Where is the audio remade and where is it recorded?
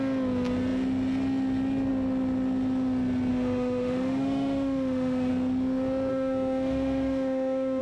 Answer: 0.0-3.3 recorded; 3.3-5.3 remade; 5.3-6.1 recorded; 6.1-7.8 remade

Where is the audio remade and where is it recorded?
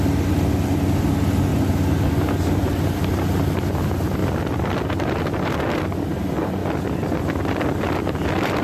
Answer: 0.0-8.6 recorded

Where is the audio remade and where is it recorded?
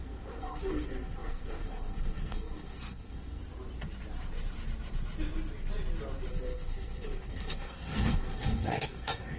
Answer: 0.0-3.4 remade; 3.4-6.3 recorded; 6.3-9.4 remade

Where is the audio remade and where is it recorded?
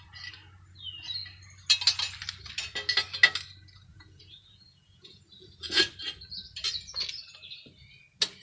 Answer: 0.0-3.9 recorded; 3.9-5.8 remade; 5.8-8.4 recorded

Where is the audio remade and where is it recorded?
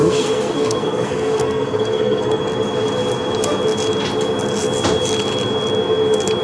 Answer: 0.0-2.4 remade; 2.4-6.4 recorded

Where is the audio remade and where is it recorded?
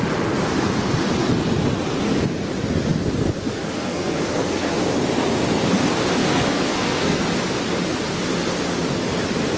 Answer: 0.0-3.5 recorded; 3.5-4.7 remade; 4.7-6.2 recorded; 6.2-7.2 remade; 7.2-9.6 recorded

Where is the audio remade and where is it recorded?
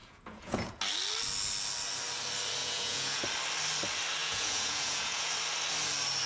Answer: 0.0-0.8 remade; 0.8-2.6 recorded; 2.6-3.2 remade; 3.2-4.2 recorded; 4.2-5.3 remade; 5.3-6.3 recorded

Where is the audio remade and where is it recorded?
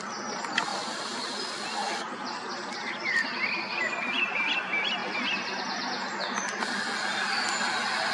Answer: 0.0-5.0 remade; 5.0-8.1 recorded